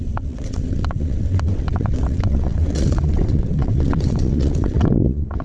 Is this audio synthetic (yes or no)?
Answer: yes